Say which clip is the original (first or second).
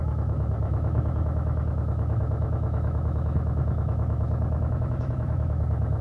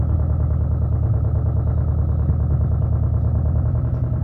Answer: second